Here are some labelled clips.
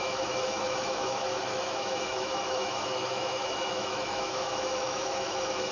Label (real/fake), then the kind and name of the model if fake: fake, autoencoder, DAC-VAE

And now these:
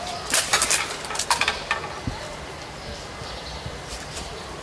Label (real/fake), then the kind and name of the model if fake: fake, vocoder, BigVGAN v2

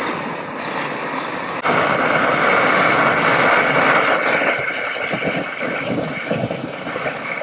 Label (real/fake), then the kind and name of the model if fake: real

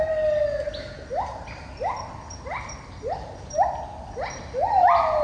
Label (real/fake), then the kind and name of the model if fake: real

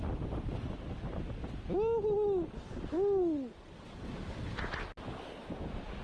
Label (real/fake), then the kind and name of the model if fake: real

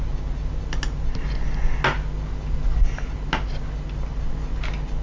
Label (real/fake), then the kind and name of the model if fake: real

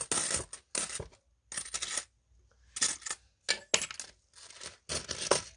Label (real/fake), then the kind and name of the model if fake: real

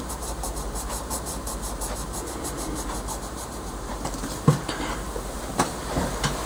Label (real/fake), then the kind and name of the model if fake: fake, vocoder, BigVGAN v2